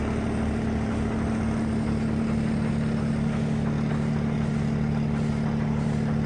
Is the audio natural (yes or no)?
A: yes